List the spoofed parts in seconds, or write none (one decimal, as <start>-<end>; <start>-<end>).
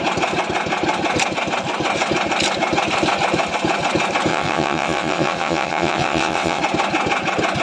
4.3-6.6